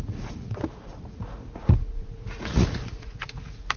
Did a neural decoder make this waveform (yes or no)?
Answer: yes